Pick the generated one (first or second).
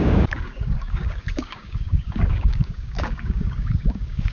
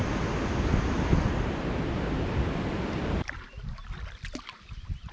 first